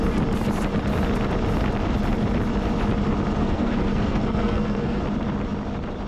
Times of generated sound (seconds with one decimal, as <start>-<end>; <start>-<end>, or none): 3.4-5.0